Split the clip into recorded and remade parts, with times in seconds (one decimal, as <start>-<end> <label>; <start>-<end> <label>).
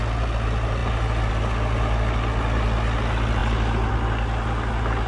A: 0.0-5.1 recorded